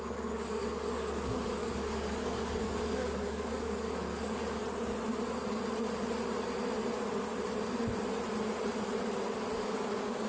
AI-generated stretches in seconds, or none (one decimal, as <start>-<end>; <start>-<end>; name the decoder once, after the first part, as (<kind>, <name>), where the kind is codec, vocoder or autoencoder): 0.0-4.6 (codec, DAC); 9.6-10.3